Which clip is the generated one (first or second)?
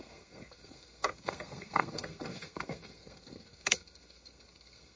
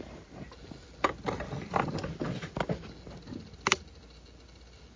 first